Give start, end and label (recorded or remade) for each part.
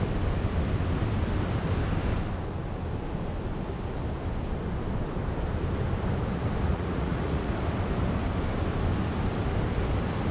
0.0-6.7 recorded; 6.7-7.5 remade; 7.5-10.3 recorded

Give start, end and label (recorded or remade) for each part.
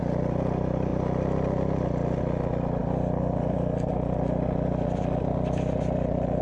0.0-6.4 recorded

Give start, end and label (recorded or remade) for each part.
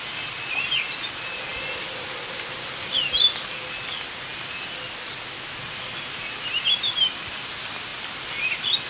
0.0-8.9 recorded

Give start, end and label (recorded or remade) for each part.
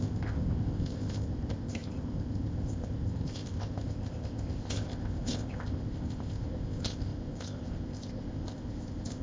0.0-9.2 remade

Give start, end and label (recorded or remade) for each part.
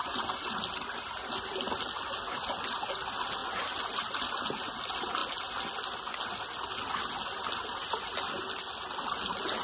0.0-9.6 recorded